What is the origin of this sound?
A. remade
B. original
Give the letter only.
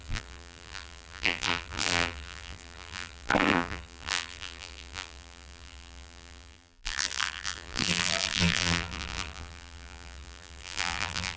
A